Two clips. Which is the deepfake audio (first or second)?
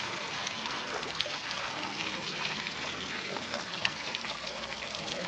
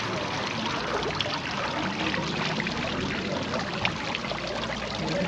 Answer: first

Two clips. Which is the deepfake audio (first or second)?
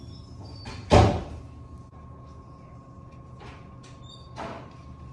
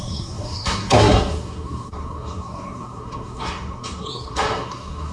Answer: second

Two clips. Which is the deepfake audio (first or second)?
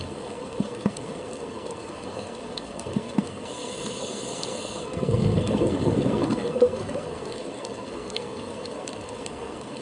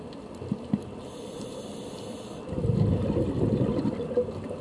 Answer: first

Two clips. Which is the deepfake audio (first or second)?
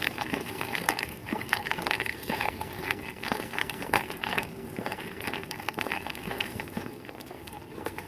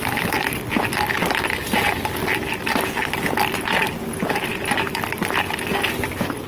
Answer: first